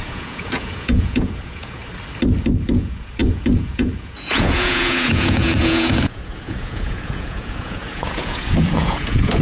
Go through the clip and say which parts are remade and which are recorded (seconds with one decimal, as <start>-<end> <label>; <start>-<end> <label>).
0.0-1.8 remade; 1.8-2.7 recorded; 2.7-9.4 remade